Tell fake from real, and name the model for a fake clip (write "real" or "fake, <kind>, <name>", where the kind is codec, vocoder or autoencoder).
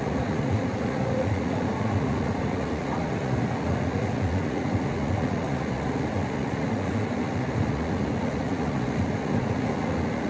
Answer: fake, vocoder, Vocos